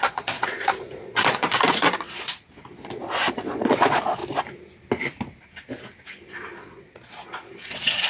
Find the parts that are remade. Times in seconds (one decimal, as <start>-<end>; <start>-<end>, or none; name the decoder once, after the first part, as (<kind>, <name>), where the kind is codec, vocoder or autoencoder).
0.0-2.7 (vocoder, Vocos); 3.3-4.2; 6.6-8.1